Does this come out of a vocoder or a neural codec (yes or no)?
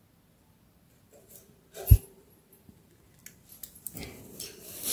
no